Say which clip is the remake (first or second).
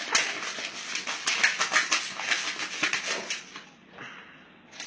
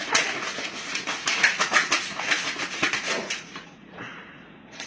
second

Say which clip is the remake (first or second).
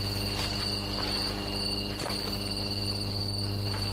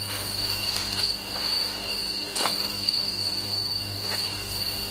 second